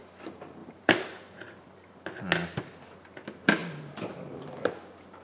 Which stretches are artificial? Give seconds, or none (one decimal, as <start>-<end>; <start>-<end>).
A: 0.6-1.9